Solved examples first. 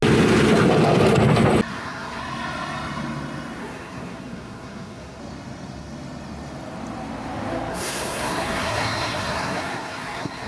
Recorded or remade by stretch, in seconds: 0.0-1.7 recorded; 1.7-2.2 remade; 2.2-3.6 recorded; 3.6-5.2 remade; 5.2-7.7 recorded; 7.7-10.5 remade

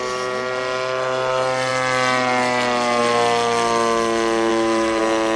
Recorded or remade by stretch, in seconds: 0.0-4.5 recorded; 4.5-5.0 remade; 5.0-5.4 recorded

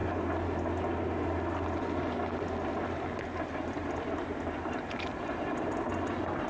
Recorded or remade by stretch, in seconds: 0.0-3.5 recorded; 3.5-6.5 remade

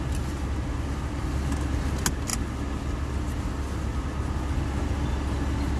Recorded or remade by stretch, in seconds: 0.0-5.8 recorded

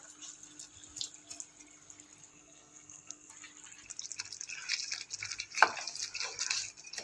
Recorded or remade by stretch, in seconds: 0.0-2.3 recorded; 2.3-3.3 remade; 3.3-7.0 recorded

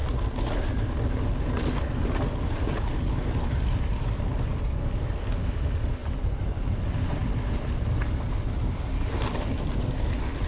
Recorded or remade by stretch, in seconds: 0.0-10.5 recorded

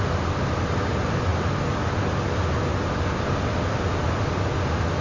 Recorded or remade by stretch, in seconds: 0.0-5.0 recorded